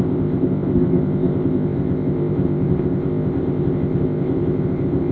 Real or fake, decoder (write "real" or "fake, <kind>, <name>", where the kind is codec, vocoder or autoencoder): fake, codec, ZipCodec